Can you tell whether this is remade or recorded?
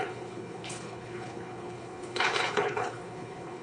remade